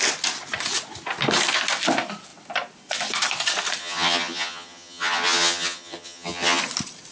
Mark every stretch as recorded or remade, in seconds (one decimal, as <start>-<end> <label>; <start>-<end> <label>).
0.0-3.8 recorded; 3.8-6.6 remade; 6.6-7.1 recorded

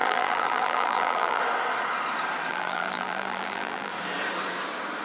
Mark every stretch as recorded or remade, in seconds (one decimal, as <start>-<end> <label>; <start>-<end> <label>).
0.0-1.4 remade; 1.4-2.5 recorded; 2.5-3.9 remade; 3.9-5.0 recorded

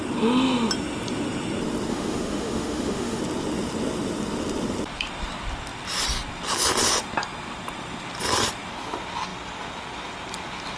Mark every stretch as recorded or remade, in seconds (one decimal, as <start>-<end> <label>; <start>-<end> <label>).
0.0-1.9 recorded; 1.9-3.2 remade; 3.2-10.8 recorded